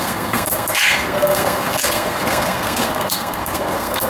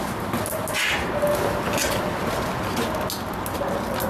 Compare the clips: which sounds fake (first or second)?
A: first